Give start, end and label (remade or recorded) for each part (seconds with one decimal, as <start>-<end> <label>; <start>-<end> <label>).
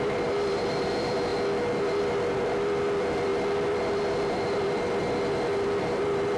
0.0-1.3 remade; 1.3-2.0 recorded; 2.0-6.4 remade